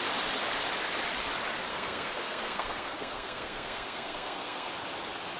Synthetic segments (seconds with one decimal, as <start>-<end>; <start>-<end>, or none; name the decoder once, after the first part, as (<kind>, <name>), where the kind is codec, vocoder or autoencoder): 1.7-4.7 (codec, SNAC)